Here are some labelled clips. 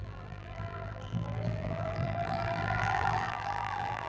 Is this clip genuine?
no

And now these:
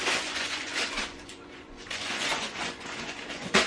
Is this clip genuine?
no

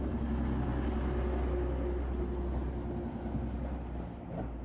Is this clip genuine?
yes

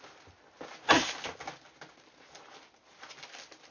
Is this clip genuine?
yes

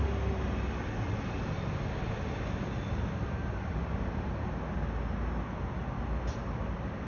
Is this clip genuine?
yes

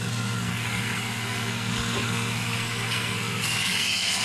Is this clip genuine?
no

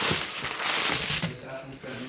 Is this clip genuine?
yes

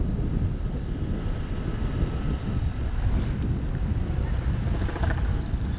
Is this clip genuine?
yes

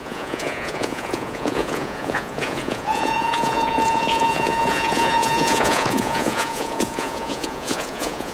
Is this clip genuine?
no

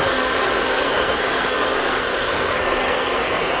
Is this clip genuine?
no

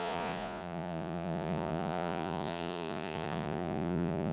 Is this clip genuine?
no